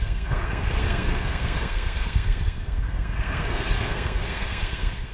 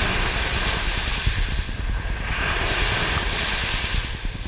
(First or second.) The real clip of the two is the second